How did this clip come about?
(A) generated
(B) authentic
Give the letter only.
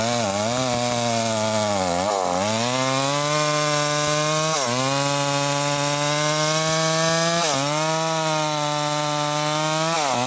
B